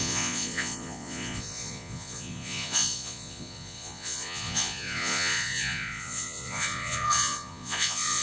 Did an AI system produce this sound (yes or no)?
yes